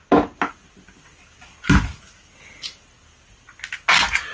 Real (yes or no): yes